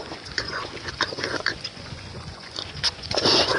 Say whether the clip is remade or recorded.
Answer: remade